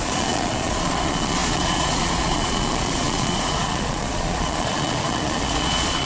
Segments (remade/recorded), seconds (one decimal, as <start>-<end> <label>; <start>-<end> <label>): 0.0-6.1 remade